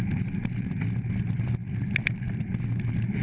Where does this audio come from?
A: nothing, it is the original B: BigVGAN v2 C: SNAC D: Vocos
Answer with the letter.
A